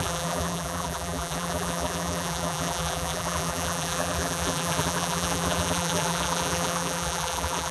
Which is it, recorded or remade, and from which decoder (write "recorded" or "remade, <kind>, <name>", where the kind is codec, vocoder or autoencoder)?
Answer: remade, vocoder, BigVGAN v2